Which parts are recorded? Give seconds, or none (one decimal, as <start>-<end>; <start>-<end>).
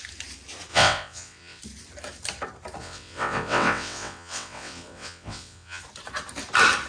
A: 0.0-0.7; 1.6-2.8; 5.8-6.9